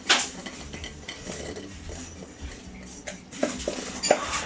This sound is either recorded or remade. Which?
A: recorded